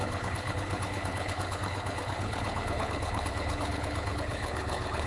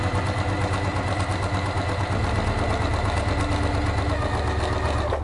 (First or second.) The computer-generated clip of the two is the first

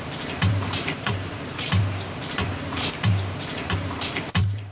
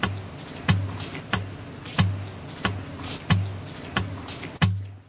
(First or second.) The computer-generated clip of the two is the first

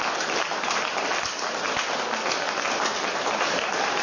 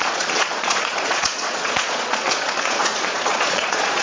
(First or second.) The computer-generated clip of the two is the second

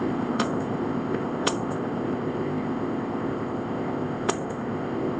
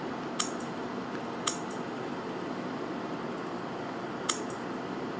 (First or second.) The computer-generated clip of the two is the first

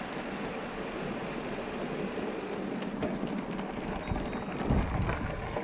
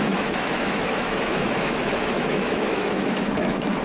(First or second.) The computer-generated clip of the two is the second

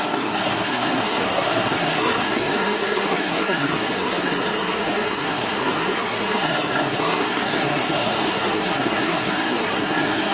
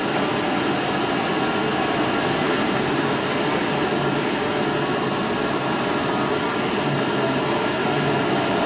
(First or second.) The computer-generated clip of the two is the first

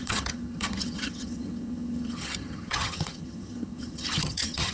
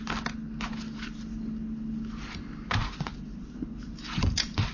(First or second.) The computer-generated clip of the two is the first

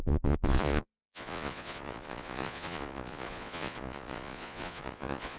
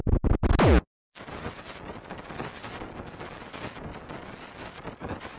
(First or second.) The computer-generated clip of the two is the first